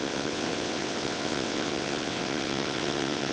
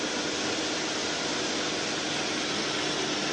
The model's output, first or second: first